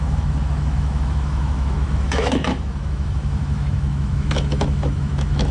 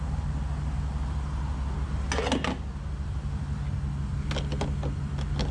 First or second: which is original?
second